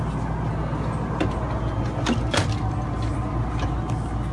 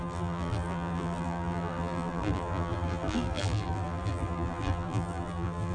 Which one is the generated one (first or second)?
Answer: second